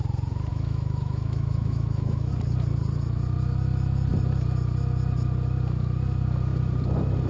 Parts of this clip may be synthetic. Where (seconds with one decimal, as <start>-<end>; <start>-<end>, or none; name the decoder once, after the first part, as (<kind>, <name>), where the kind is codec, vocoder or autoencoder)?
0.5-2.3 (autoencoder, DAC-VAE)